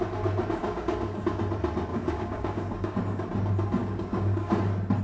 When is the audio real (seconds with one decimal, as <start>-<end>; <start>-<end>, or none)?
0.0-0.6; 1.4-1.9; 3.0-3.8; 4.5-5.0

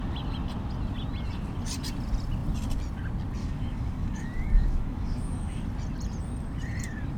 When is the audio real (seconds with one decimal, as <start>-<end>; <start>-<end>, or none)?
0.0-3.4; 5.6-7.2

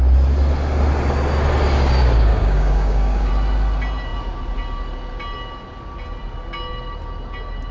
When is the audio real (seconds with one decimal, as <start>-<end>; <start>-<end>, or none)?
0.0-2.3; 3.3-7.7

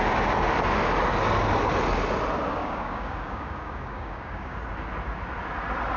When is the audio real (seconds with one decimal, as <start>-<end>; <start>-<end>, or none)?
0.0-2.6; 4.6-6.0

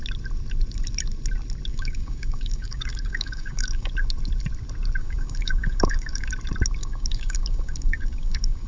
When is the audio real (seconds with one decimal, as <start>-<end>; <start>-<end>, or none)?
0.0-1.7; 3.9-5.0; 6.3-6.8

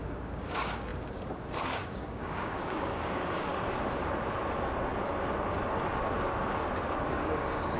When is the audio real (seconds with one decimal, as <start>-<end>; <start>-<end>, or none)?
3.5-7.1